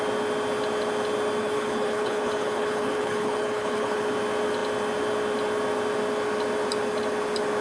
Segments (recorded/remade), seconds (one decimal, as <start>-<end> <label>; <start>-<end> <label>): 0.0-1.4 recorded; 1.4-4.0 remade; 4.0-7.6 recorded